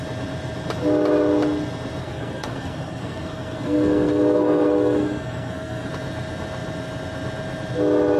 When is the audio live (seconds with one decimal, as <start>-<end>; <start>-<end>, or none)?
0.0-2.0; 5.9-8.2